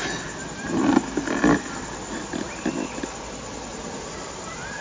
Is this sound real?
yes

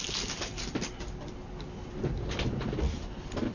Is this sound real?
yes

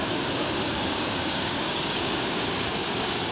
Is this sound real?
no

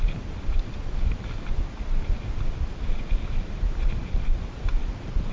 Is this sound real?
yes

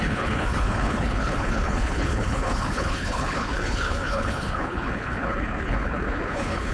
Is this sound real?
no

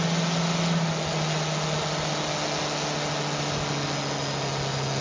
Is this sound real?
yes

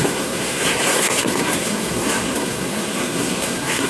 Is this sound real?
no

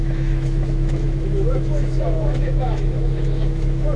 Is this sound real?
no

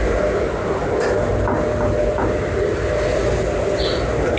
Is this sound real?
yes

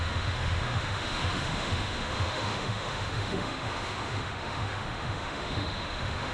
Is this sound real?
no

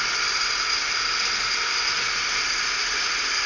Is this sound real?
yes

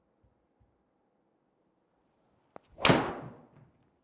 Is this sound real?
yes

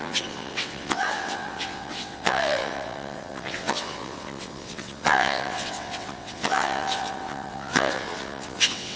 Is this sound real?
no